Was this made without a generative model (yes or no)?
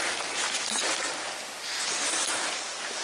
yes